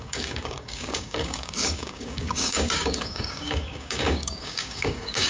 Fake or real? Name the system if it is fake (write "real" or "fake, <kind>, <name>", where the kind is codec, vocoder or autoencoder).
fake, codec, DAC